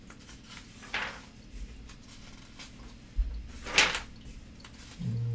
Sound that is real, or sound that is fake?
real